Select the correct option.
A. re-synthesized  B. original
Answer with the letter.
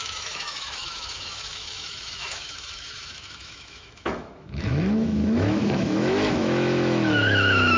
A